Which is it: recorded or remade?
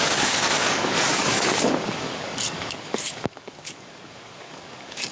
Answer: remade